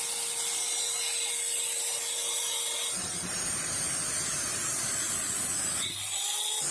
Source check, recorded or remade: recorded